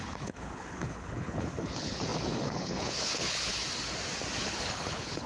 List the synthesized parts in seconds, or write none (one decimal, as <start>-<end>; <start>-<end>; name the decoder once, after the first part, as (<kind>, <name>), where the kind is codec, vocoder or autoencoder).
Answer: 0.0-3.5 (codec, HILCodec); 4.4-5.3